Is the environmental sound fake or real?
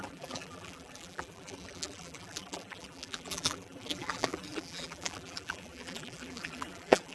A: fake